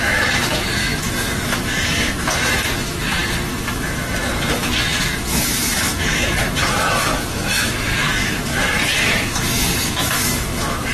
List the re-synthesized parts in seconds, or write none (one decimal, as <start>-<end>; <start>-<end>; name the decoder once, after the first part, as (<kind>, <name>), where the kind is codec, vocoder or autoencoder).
0.0-10.9 (autoencoder, DAC-VAE)